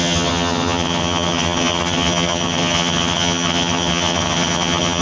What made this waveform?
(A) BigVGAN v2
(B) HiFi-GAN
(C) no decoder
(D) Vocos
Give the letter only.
B